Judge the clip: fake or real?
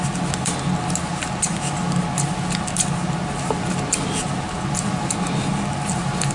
real